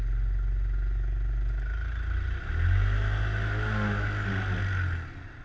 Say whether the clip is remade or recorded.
recorded